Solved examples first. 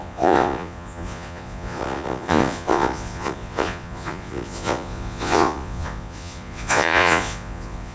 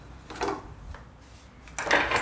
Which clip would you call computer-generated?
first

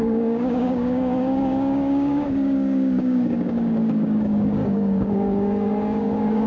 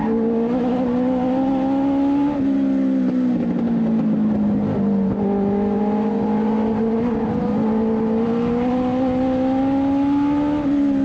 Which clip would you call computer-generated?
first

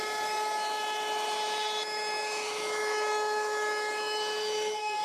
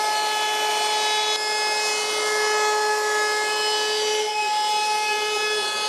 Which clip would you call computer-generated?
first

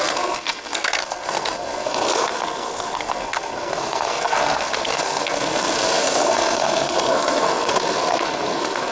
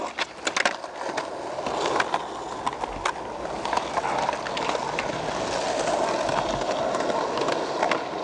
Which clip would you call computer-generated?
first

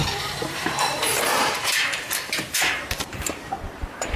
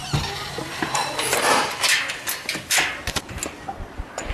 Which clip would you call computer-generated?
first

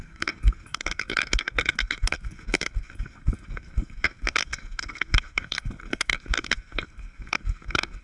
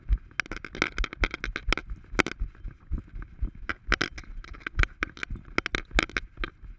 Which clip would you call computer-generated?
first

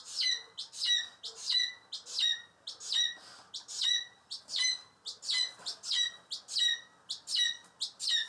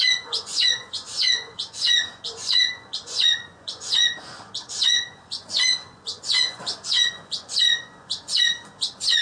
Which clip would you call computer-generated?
second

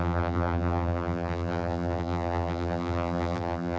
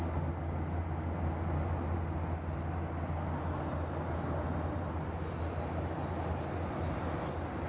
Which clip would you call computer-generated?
first